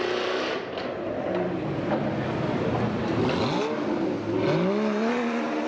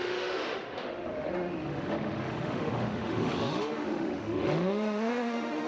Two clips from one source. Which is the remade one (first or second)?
second